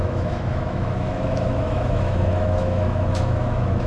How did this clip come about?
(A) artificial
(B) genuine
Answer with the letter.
A